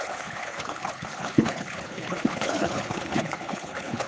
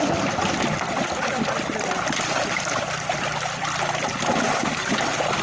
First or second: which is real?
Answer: second